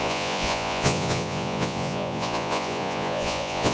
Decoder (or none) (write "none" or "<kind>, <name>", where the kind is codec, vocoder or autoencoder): vocoder, Vocos